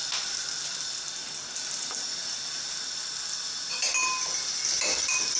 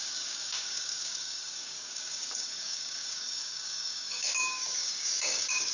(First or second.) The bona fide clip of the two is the first